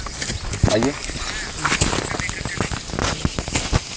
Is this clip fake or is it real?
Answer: real